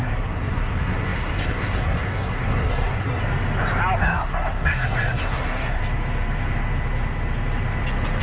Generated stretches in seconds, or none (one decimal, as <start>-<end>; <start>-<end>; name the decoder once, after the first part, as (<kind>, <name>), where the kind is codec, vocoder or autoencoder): 0.0-3.2 (codec, SNAC); 4.0-5.8